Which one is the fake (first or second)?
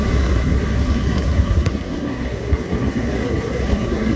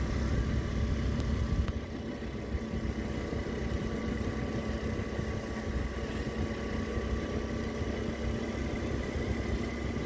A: first